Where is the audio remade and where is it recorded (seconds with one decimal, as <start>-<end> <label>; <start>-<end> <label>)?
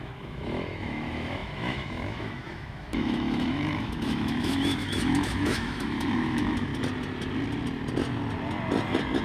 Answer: 0.0-6.7 remade; 6.7-9.2 recorded